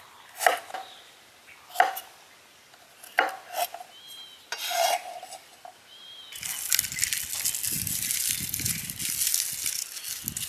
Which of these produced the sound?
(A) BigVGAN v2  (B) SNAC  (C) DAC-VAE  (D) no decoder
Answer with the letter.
D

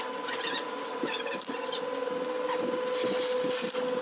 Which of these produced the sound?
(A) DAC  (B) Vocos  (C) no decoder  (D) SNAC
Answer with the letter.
C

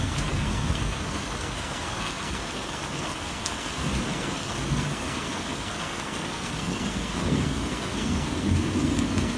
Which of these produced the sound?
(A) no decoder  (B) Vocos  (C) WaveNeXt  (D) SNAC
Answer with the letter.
D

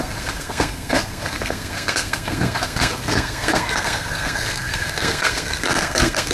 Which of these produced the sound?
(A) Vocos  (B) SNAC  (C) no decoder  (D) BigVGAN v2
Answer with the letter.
B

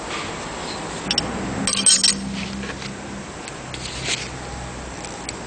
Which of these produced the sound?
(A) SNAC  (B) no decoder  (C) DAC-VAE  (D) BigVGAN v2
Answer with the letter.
B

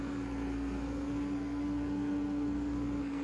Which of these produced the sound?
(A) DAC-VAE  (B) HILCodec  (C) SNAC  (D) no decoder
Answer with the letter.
C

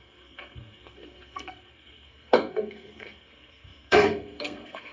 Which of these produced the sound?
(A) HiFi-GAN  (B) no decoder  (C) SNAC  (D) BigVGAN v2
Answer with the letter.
C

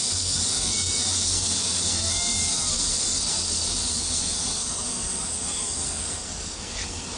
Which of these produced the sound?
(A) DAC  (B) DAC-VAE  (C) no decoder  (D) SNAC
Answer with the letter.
D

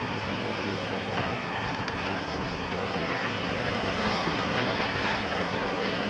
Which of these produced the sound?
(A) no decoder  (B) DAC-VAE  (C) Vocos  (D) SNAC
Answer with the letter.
D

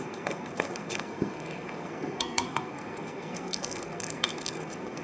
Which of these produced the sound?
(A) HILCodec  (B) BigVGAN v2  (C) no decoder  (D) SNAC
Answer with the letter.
D